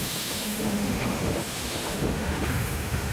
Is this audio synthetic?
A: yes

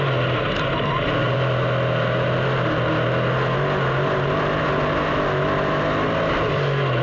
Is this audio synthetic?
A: no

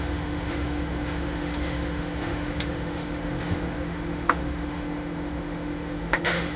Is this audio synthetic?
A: yes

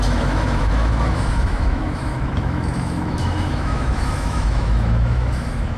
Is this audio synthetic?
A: yes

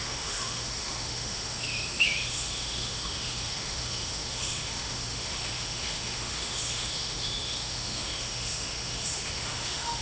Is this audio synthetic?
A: yes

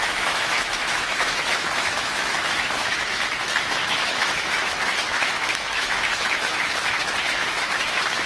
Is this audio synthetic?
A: yes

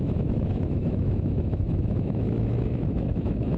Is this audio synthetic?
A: yes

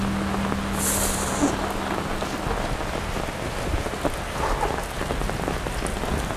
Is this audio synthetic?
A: no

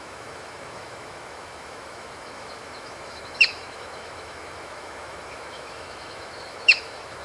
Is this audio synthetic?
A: yes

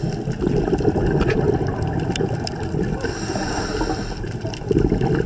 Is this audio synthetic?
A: no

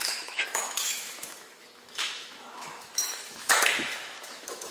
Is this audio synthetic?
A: yes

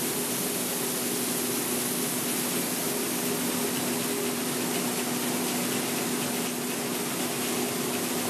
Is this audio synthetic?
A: no